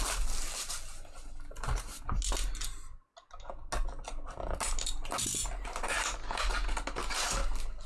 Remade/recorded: recorded